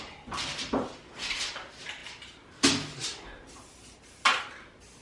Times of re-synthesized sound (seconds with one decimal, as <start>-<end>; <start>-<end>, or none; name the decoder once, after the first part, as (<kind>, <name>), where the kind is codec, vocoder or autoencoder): none